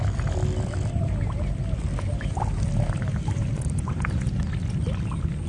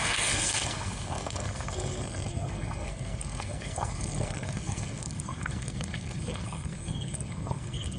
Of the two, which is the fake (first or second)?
second